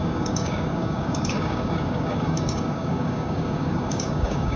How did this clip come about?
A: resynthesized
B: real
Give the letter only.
A